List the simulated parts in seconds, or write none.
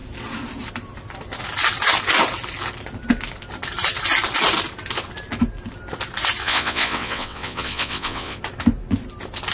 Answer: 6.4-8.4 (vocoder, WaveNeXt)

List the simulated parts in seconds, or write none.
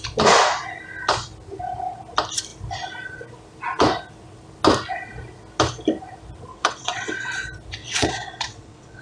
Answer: 6.5-7.3 (vocoder, WaveNeXt); 7.8-9.0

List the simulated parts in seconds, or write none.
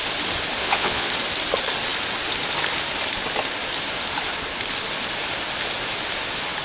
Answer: 0.6-1.1 (vocoder, WaveNeXt)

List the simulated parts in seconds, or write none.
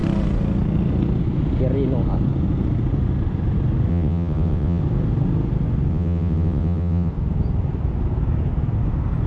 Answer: 3.9-4.8 (vocoder, WaveNeXt); 5.9-7.1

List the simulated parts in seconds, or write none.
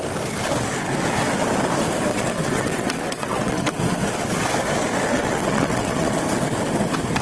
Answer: 2.1-3.8 (vocoder, WaveNeXt); 5.1-6.2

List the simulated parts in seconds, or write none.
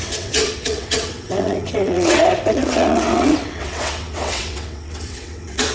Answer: 0.0-5.7 (vocoder, WaveNeXt)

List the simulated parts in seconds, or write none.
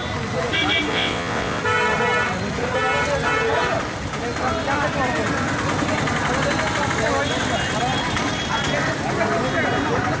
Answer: 0.9-1.6 (vocoder, WaveNeXt)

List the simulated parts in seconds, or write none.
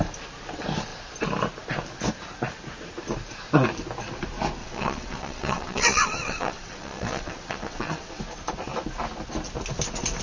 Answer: 4.6-8.2 (vocoder, WaveNeXt)